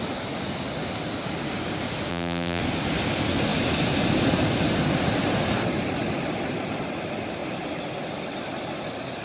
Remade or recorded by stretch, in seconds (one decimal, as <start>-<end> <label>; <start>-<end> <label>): 0.0-2.1 recorded; 2.1-2.6 remade; 2.6-9.2 recorded